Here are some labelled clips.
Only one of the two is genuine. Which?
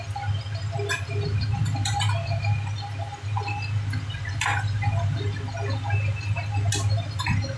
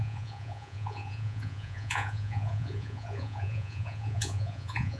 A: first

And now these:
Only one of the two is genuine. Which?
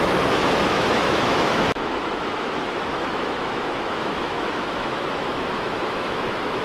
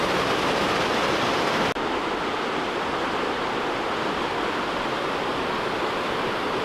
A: second